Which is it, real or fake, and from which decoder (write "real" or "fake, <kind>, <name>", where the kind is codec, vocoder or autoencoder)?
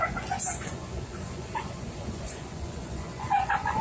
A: fake, vocoder, Vocos